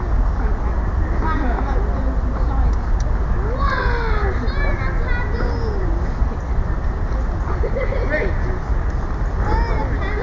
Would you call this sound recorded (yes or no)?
yes